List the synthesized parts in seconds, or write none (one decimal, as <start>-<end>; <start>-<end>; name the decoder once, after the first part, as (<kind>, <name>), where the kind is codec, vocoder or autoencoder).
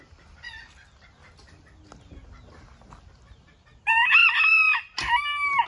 none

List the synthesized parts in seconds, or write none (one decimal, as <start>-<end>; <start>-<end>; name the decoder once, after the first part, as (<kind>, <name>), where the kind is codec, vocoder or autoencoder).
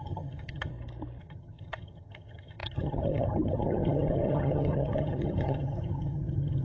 0.0-0.7 (vocoder, HiFi-GAN); 1.2-6.6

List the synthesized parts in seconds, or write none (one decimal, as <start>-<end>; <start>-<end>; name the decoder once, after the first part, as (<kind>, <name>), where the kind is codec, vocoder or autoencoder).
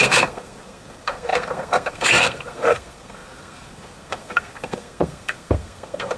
0.0-6.2 (codec, SNAC)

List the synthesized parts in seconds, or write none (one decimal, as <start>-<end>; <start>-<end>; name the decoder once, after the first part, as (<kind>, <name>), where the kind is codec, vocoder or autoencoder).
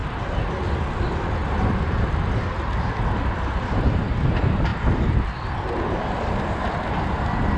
0.7-7.6 (vocoder, BigVGAN v2)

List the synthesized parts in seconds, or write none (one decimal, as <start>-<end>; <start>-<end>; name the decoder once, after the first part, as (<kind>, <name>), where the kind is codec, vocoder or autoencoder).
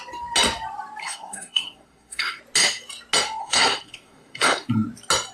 1.0-2.4 (codec, SNAC); 3.4-4.7